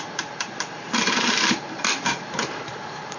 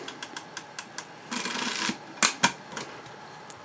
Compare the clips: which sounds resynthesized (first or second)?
first